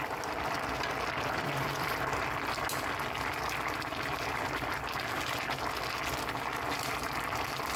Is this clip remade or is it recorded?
recorded